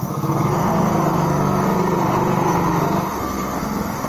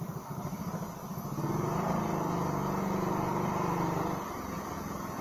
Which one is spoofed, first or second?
first